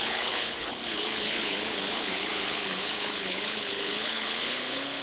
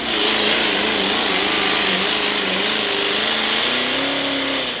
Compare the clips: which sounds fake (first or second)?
first